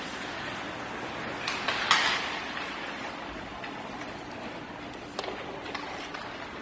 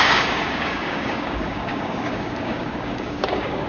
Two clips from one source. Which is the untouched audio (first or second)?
first